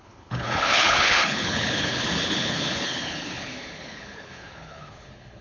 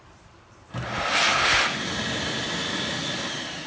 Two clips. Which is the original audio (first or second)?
second